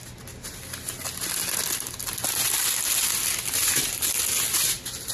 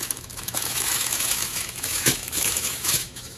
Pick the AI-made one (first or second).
second